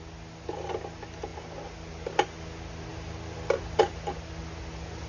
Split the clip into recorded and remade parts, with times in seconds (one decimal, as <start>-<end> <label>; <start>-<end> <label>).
0.0-5.1 recorded